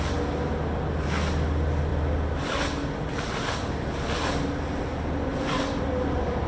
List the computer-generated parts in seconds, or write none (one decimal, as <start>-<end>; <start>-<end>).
none